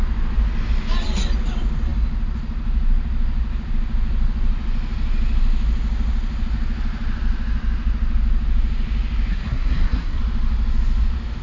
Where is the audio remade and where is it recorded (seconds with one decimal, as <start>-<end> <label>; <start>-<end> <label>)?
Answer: 0.0-9.3 recorded; 9.3-10.2 remade; 10.2-11.4 recorded